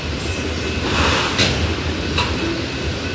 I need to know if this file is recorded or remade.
recorded